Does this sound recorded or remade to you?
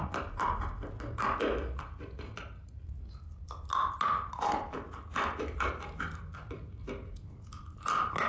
recorded